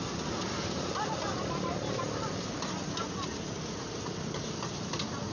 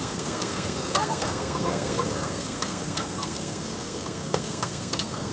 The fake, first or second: second